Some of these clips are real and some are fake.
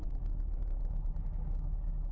real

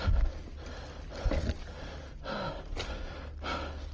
real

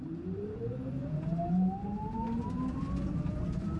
fake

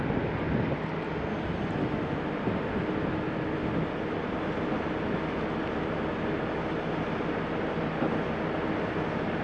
real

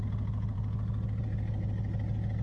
real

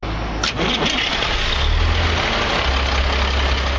real